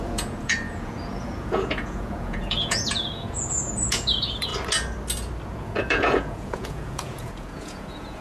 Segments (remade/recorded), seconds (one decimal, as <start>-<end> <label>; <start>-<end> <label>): 0.0-4.5 remade; 4.5-5.5 recorded; 5.5-8.2 remade